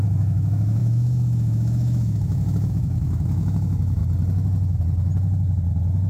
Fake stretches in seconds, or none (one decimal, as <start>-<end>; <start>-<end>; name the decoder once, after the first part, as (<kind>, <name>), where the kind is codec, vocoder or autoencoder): 0.0-4.0 (autoencoder, DAC-VAE)